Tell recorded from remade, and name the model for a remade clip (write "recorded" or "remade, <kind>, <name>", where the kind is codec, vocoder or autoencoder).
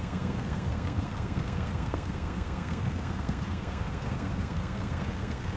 remade, codec, SNAC